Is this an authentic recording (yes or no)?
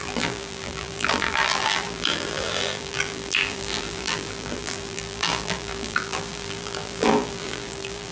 no